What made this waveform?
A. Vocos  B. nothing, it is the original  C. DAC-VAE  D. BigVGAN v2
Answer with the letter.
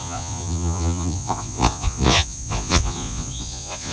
A